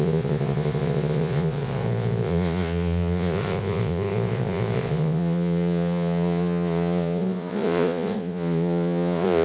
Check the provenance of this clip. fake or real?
fake